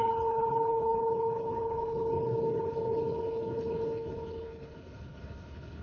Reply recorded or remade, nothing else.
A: remade